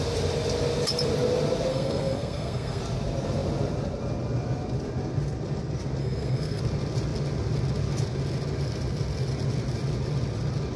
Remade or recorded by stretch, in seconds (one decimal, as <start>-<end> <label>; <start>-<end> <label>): 0.0-1.7 recorded; 1.7-2.8 remade; 2.8-6.0 recorded; 6.0-6.6 remade; 6.6-10.8 recorded